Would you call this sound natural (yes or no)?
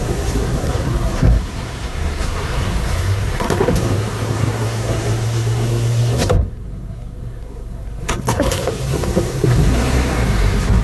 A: no